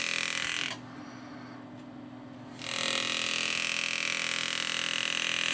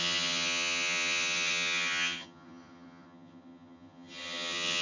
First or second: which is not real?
second